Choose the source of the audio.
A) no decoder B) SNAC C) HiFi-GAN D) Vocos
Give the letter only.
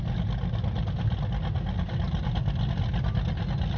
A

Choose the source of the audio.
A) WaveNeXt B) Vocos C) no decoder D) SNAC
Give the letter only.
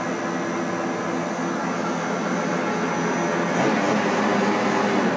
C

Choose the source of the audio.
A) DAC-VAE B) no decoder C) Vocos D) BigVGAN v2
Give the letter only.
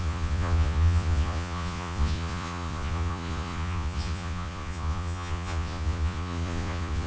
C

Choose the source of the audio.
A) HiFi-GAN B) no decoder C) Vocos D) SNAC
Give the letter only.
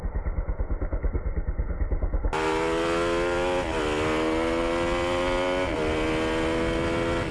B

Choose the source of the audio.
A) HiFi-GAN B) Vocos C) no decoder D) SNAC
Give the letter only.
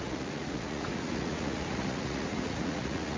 B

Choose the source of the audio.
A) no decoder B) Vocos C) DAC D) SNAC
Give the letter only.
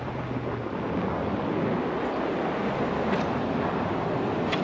A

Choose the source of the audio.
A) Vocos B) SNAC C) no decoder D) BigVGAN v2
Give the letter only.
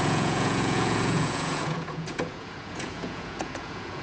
A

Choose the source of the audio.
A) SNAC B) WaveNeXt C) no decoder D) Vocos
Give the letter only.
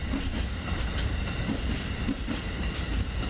C